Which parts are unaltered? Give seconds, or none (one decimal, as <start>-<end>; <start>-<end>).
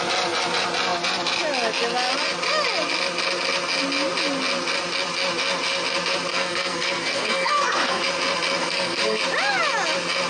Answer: 0.0-6.3; 8.0-8.6; 9.2-10.3